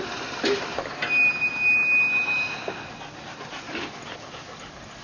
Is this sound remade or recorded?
recorded